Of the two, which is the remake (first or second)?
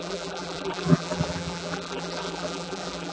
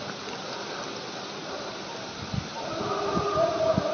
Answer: first